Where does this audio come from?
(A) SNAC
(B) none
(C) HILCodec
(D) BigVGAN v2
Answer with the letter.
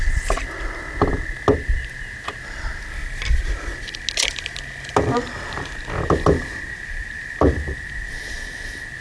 B